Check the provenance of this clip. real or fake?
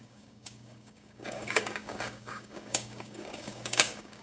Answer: fake